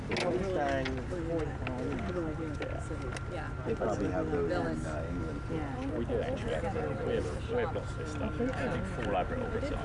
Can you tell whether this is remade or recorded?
recorded